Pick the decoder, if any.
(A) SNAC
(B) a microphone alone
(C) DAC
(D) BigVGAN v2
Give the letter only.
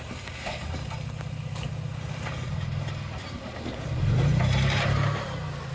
B